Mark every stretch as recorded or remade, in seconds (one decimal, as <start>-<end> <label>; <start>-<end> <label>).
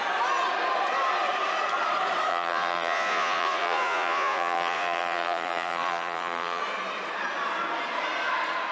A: 0.0-2.3 recorded; 2.3-6.6 remade; 6.6-8.7 recorded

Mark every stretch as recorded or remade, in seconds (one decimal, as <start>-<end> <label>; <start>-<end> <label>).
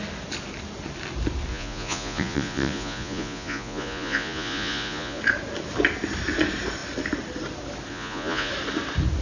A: 0.0-1.5 recorded; 1.5-5.2 remade; 5.2-7.9 recorded; 7.9-8.5 remade; 8.5-9.2 recorded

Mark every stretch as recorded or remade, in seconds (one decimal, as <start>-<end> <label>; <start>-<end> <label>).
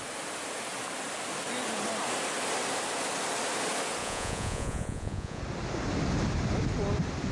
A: 0.0-4.0 recorded; 4.0-5.4 remade; 5.4-7.3 recorded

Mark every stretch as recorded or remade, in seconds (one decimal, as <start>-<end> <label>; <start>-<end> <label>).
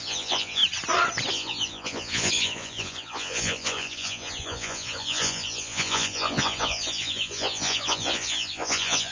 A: 0.0-0.6 remade; 0.6-1.3 recorded; 1.3-9.1 remade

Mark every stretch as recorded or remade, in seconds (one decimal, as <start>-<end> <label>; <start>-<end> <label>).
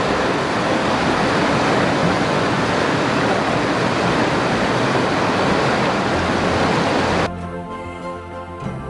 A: 0.0-2.0 recorded; 2.0-2.6 remade; 2.6-8.9 recorded